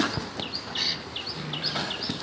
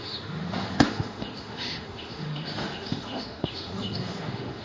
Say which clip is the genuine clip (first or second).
first